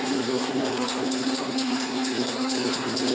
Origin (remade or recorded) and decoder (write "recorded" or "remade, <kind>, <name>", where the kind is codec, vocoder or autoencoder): remade, codec, SNAC